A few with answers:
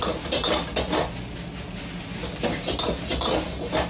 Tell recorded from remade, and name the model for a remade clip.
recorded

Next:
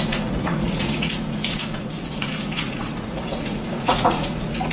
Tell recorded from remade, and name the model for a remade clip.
remade, vocoder, Vocos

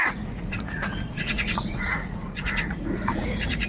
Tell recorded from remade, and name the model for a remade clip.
remade, vocoder, Vocos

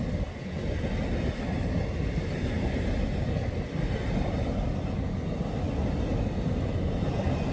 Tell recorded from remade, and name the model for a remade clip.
recorded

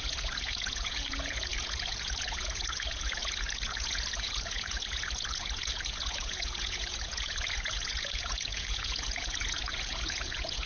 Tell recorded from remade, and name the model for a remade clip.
remade, vocoder, Vocos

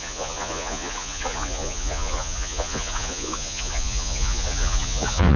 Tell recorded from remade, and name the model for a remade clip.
remade, vocoder, Vocos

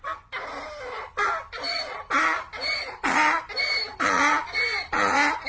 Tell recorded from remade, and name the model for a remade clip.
recorded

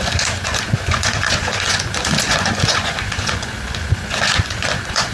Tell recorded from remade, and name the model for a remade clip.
remade, vocoder, Vocos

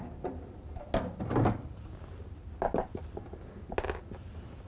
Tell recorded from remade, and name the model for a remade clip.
recorded